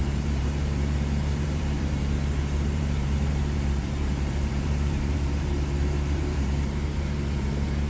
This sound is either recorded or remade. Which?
remade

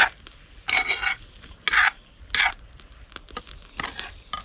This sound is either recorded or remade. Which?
recorded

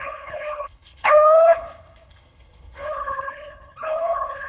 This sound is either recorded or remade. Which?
remade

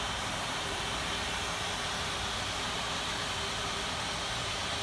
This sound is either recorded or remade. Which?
recorded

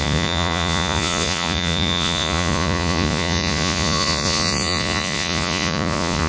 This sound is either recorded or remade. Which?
remade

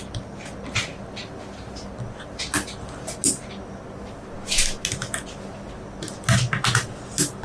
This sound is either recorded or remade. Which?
recorded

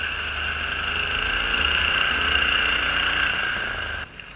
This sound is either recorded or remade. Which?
recorded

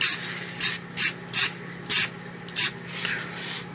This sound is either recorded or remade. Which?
recorded